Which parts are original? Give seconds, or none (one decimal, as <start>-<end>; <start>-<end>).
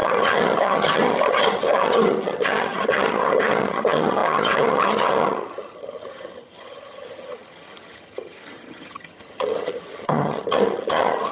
none